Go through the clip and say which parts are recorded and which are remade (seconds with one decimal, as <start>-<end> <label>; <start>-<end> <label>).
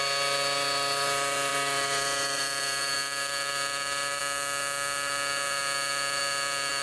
0.0-1.5 recorded; 1.5-4.2 remade; 4.2-6.8 recorded